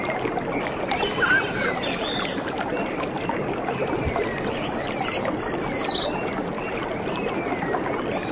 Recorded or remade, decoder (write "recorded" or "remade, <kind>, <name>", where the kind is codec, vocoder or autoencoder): recorded